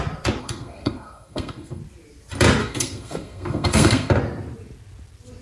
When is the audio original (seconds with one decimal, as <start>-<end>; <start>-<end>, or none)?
0.0-0.4; 1.8-2.6; 4.1-5.4

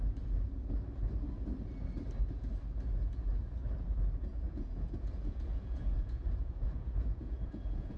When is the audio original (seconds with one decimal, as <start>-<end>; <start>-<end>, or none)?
0.0-4.3

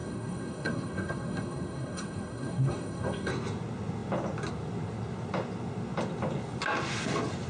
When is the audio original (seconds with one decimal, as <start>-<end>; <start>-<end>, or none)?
3.3-7.5

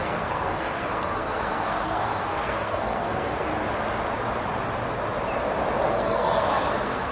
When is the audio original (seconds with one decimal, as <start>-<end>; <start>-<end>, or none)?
3.5-5.9

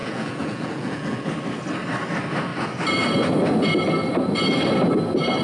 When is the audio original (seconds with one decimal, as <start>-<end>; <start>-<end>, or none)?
1.3-5.4

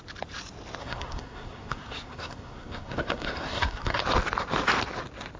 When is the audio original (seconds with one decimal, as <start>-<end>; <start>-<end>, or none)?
0.0-0.8; 4.0-5.4

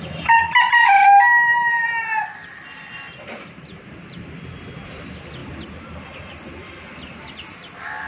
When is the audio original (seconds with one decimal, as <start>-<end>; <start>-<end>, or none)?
0.0-8.1